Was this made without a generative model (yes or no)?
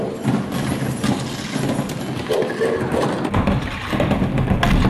yes